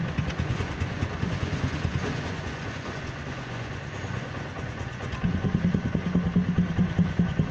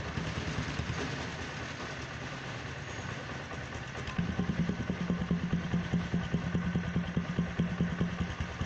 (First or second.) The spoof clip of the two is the first